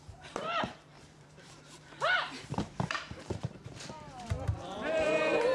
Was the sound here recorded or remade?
remade